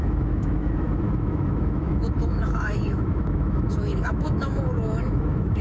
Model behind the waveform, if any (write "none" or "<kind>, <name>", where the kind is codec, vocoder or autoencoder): autoencoder, DAC-VAE